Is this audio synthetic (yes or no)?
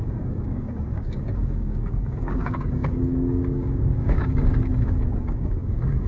yes